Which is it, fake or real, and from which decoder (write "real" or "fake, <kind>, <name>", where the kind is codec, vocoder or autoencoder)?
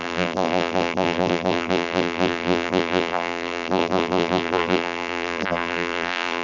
fake, vocoder, BigVGAN v2